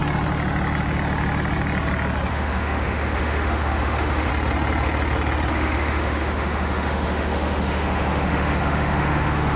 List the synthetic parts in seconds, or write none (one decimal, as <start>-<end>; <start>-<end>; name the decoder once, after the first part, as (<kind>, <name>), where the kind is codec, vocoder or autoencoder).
2.3-4.3 (autoencoder, DAC-VAE); 5.5-9.6